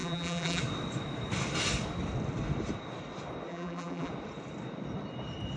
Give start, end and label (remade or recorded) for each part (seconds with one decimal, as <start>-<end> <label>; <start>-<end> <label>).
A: 0.0-0.6 remade; 0.6-3.5 recorded; 3.5-4.1 remade; 4.1-5.6 recorded